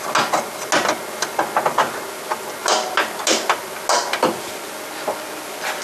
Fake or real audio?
real